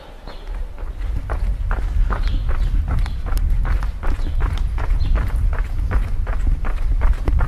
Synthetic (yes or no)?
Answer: no